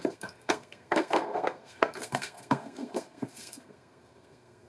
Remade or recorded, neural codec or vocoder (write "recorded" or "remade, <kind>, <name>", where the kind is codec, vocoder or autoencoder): remade, codec, SNAC